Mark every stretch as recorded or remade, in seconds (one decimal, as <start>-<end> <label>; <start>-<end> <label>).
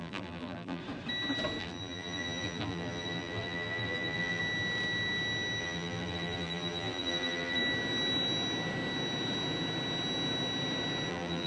0.0-0.8 remade; 0.8-1.6 recorded; 1.6-4.4 remade; 4.4-5.6 recorded; 5.6-7.6 remade; 7.6-11.1 recorded; 11.1-11.5 remade